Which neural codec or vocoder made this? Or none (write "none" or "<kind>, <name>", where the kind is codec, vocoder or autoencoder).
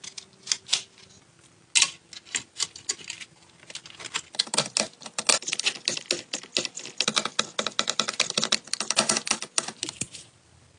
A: none